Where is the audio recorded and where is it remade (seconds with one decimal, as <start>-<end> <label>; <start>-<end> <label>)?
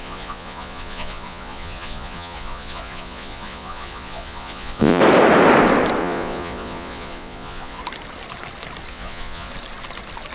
0.0-5.0 remade; 5.0-6.0 recorded; 6.0-7.8 remade; 7.8-8.9 recorded; 8.9-9.5 remade; 9.5-10.3 recorded